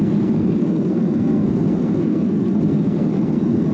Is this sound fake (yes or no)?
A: yes